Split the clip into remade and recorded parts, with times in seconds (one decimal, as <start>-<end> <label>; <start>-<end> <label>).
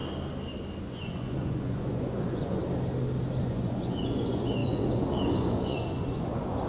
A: 0.0-0.8 recorded; 0.8-2.6 remade; 2.6-3.4 recorded; 3.4-6.7 remade